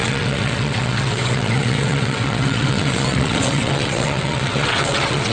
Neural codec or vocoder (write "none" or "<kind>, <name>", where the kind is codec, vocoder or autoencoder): vocoder, WaveNeXt